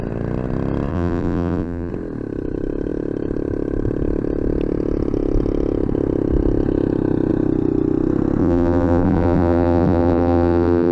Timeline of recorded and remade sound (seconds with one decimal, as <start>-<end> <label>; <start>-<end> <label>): 0.0-0.9 recorded; 0.9-1.9 remade; 1.9-8.4 recorded; 8.4-10.9 remade